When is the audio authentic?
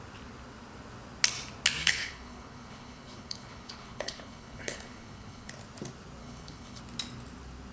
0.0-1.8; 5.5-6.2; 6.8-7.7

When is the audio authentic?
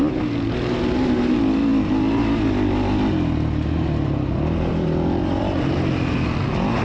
0.0-6.8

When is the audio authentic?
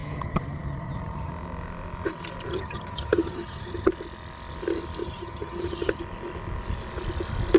1.3-2.5; 3.9-5.0; 6.0-7.6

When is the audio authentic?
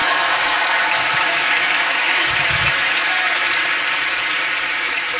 3.4-4.7